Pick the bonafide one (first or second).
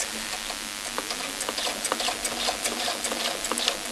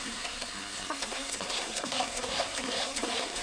first